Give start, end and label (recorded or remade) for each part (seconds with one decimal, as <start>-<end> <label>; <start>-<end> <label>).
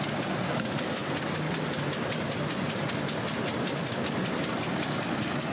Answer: 0.0-5.5 recorded